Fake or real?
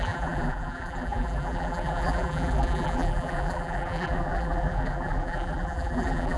fake